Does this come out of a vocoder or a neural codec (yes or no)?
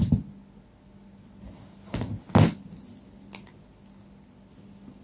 no